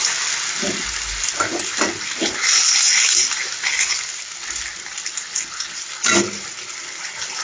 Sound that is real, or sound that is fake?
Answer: real